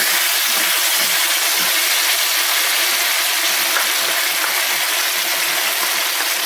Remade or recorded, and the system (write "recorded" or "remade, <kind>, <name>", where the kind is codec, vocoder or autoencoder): recorded